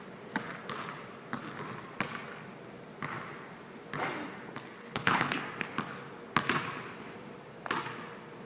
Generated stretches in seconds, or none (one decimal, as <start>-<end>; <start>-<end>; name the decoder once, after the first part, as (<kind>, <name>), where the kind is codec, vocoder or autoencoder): 4.8-5.4 (codec, HILCodec)

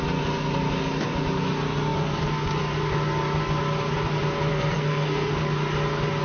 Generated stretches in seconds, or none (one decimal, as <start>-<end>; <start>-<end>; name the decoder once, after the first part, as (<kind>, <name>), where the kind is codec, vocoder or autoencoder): 4.5-5.3 (codec, SNAC)